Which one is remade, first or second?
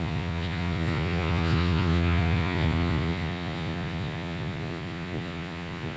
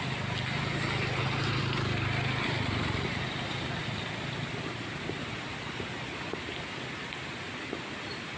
first